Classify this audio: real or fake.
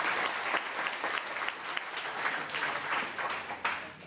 real